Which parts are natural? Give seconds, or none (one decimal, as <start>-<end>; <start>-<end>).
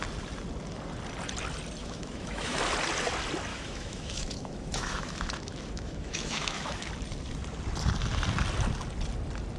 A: 0.0-1.8; 2.6-3.5; 6.9-9.6